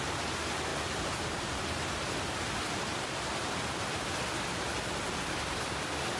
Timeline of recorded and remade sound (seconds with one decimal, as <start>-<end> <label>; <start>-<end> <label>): 0.0-6.2 recorded